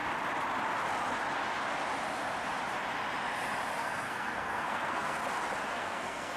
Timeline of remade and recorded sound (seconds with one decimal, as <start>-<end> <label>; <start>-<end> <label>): 0.0-3.8 recorded; 3.8-5.2 remade; 5.2-5.7 recorded; 5.7-6.4 remade